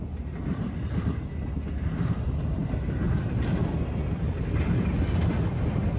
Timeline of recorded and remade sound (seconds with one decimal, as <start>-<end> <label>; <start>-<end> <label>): 0.0-6.0 recorded